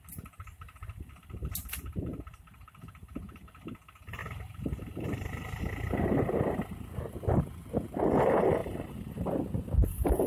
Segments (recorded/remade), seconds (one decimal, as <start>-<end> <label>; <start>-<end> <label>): 0.0-1.4 recorded; 1.4-3.4 remade; 3.4-8.6 recorded; 8.6-10.3 remade